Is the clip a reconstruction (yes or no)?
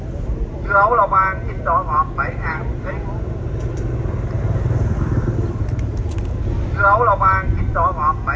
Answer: no